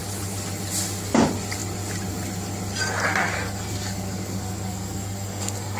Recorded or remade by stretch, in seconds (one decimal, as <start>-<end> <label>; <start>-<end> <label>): 0.0-3.2 recorded; 3.2-5.8 remade